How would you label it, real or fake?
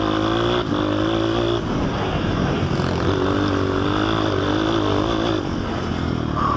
real